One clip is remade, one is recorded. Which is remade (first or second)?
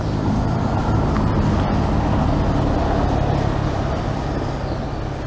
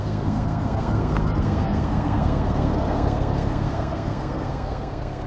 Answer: second